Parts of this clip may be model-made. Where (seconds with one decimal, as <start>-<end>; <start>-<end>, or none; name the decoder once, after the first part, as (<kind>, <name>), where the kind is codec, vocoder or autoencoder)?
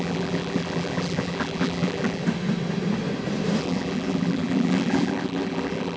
0.0-2.2 (vocoder, BigVGAN v2); 3.6-6.0